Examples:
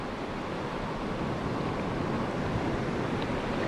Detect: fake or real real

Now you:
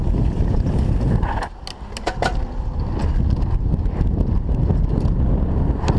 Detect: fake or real real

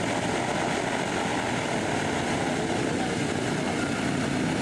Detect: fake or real real